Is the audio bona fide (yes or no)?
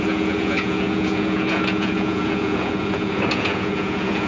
no